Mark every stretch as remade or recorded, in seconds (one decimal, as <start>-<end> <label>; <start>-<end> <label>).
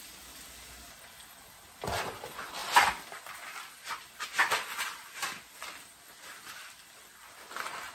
0.0-7.9 recorded